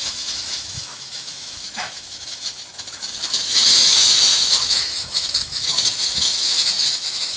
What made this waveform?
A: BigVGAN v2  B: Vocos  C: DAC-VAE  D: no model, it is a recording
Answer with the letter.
C